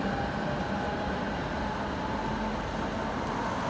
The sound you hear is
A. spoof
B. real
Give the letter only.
B